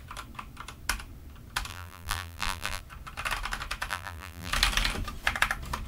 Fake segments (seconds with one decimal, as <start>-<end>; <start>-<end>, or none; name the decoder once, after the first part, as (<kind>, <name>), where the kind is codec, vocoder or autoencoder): 1.7-2.8 (vocoder, BigVGAN v2); 3.9-4.5